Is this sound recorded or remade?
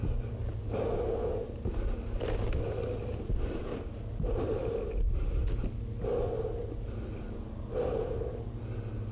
recorded